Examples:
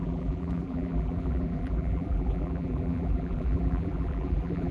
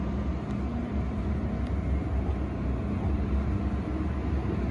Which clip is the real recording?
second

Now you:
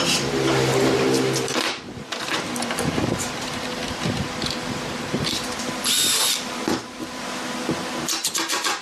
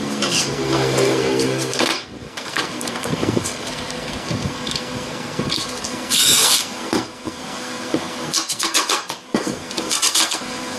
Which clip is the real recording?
first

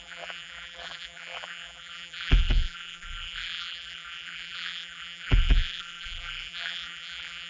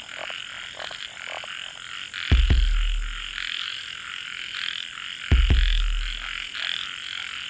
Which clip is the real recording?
second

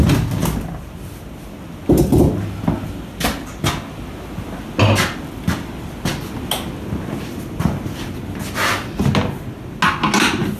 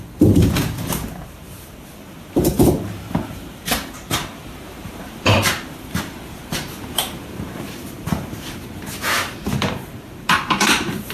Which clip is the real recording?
first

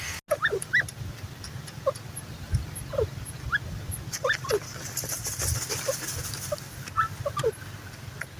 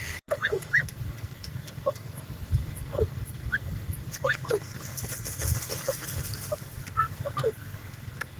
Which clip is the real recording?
first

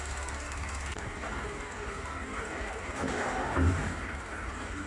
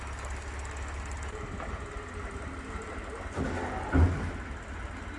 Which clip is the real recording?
second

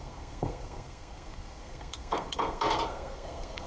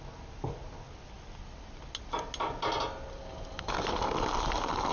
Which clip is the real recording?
second